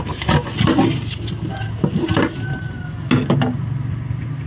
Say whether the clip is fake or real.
real